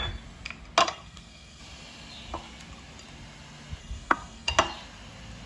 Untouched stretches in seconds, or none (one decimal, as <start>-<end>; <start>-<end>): 0.0-0.8; 1.6-3.8; 4.5-5.5